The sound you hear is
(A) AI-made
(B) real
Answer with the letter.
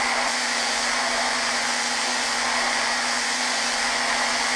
A